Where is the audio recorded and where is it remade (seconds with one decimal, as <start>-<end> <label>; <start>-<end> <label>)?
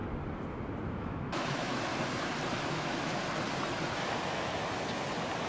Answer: 0.0-0.9 recorded; 0.9-1.9 remade; 1.9-2.5 recorded; 2.5-3.2 remade; 3.2-5.5 recorded